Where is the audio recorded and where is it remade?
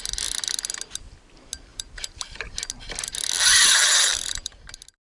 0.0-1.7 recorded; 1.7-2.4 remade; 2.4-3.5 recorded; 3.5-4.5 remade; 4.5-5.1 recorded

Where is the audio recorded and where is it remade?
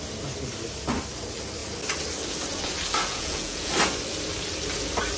0.0-3.0 recorded; 3.0-3.7 remade; 3.7-5.2 recorded